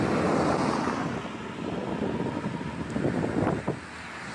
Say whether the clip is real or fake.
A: real